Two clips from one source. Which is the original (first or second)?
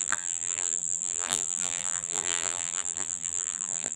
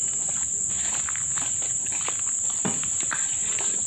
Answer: second